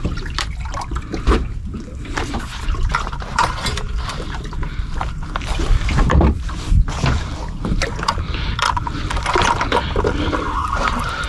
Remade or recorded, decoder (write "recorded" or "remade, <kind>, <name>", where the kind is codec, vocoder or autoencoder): remade, vocoder, BigVGAN v2